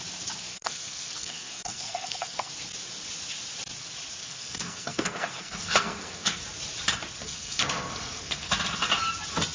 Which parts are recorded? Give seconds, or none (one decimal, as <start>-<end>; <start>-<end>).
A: 0.0-0.5; 2.5-4.2; 6.4-7.2; 8.5-9.5